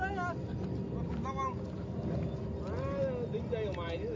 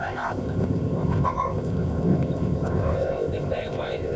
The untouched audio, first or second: first